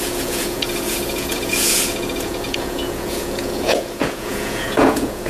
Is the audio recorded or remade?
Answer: remade